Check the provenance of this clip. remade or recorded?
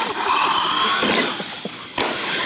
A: recorded